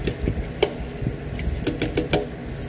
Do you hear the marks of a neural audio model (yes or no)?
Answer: no